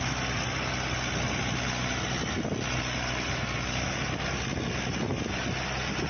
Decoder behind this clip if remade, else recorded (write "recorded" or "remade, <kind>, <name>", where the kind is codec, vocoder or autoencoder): recorded